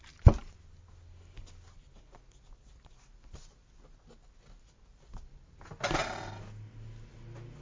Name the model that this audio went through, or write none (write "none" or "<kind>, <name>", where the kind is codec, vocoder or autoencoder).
none